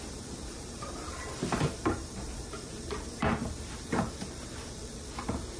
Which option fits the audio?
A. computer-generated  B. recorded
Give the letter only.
A